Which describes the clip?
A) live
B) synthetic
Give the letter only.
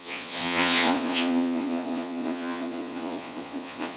B